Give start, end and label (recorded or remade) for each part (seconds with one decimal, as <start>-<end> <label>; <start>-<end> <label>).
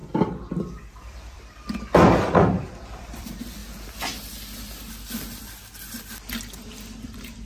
0.0-3.6 remade; 3.6-4.9 recorded; 4.9-7.5 remade